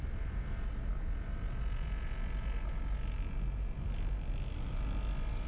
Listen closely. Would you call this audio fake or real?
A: real